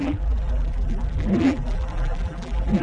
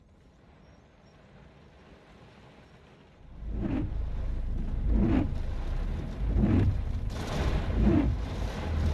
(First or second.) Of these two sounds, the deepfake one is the first